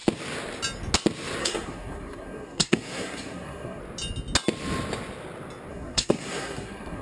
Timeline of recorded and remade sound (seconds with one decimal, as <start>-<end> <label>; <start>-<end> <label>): 0.0-1.4 recorded; 1.4-3.8 remade; 3.8-5.7 recorded; 5.7-7.0 remade